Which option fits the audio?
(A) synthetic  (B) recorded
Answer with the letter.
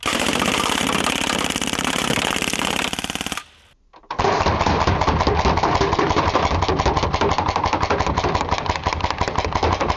B